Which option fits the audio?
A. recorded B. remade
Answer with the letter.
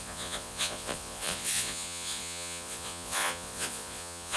B